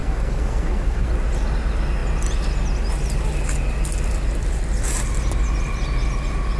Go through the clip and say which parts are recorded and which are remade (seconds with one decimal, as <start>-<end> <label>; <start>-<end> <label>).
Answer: 0.0-1.1 remade; 1.1-6.6 recorded

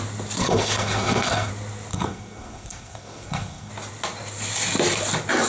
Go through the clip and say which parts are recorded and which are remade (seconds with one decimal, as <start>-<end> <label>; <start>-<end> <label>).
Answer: 0.0-0.4 recorded; 0.4-1.5 remade; 1.5-1.9 recorded; 1.9-3.7 remade; 3.7-5.5 recorded

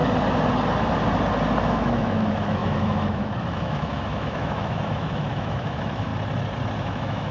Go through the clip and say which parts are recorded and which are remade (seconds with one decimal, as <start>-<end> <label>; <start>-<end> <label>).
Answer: 0.0-1.6 recorded; 1.6-6.1 remade; 6.1-6.8 recorded; 6.8-7.3 remade